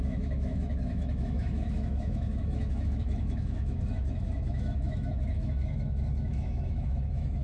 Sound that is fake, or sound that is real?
fake